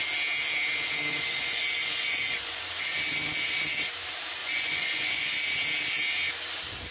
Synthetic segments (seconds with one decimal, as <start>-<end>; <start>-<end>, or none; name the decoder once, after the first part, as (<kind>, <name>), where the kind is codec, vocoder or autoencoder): 1.1-2.6 (vocoder, Vocos); 4.4-5.3